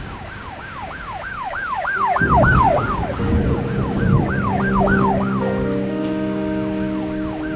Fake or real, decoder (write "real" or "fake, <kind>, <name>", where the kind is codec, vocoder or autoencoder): fake, codec, DAC